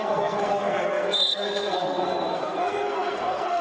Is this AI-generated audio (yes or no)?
yes